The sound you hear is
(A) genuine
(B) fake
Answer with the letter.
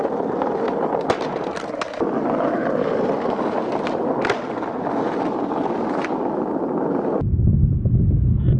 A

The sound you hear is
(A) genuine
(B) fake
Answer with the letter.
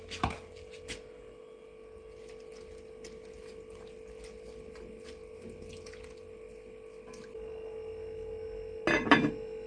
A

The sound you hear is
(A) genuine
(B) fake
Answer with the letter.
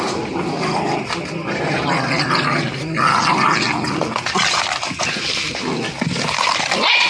A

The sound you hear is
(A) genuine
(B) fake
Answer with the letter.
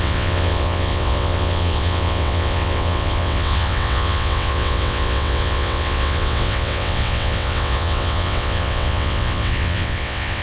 B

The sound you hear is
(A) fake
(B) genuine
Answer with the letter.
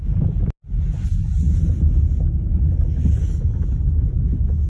B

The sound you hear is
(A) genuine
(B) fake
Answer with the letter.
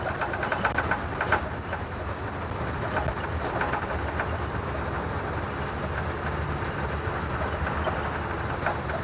A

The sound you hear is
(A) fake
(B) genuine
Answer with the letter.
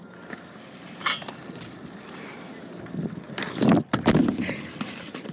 B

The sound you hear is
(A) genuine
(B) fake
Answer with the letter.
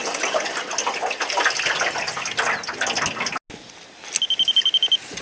A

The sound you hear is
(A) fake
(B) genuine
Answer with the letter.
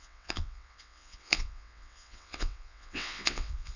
A